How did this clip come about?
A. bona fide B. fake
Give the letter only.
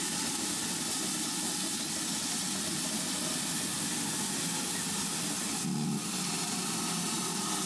A